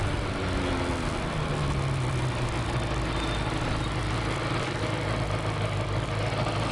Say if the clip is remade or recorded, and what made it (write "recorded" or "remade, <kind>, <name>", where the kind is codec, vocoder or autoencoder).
recorded